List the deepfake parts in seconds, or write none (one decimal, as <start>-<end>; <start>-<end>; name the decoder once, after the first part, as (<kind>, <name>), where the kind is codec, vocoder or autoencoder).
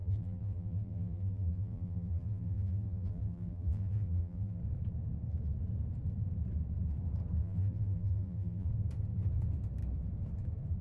0.0-4.6 (vocoder, BigVGAN v2); 7.4-8.7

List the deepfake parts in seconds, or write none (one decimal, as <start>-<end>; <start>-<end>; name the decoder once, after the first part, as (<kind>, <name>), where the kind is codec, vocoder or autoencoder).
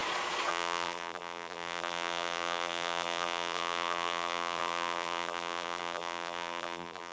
0.5-7.1 (vocoder, BigVGAN v2)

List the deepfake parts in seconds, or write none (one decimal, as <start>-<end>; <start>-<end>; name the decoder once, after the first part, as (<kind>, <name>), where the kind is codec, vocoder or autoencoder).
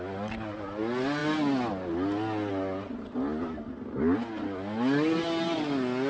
none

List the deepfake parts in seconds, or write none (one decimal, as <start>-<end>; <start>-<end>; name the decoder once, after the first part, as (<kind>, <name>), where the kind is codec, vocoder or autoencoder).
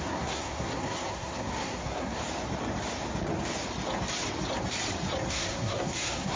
0.0-2.2 (codec, SNAC); 5.3-6.4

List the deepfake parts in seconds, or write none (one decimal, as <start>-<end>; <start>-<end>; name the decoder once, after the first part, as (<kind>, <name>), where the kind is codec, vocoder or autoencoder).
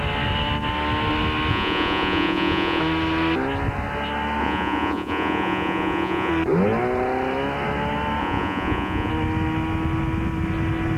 1.5-2.8 (vocoder, Vocos); 4.4-6.3; 8.2-9.1